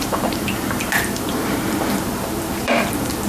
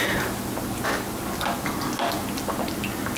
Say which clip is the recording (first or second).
second